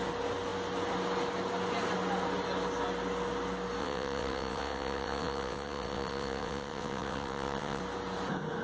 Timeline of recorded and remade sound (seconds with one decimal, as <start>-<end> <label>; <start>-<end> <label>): 0.0-3.8 recorded; 3.8-7.8 remade; 7.8-8.6 recorded